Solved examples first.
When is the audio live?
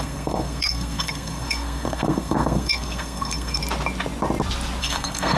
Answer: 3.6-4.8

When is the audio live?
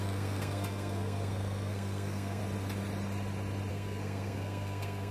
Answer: 2.4-3.7